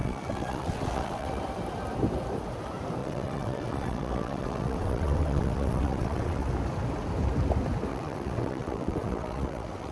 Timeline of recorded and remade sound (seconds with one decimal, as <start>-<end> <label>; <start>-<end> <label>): 0.0-1.4 remade; 1.4-3.0 recorded; 3.0-6.5 remade; 6.5-7.9 recorded; 7.9-9.9 remade